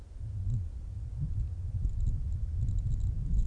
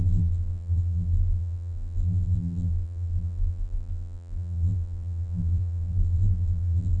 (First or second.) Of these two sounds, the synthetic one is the second